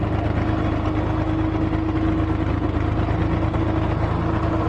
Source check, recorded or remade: recorded